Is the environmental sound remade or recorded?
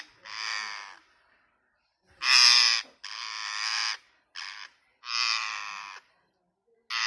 recorded